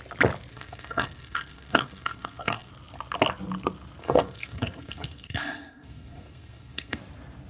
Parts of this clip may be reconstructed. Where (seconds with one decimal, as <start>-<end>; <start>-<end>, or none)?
0.5-2.7; 4.0-7.0